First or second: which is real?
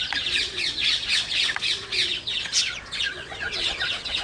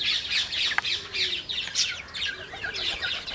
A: second